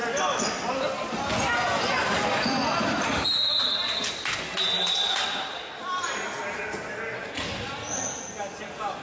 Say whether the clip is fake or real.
real